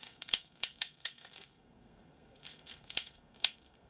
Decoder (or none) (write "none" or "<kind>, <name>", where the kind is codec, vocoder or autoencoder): codec, SNAC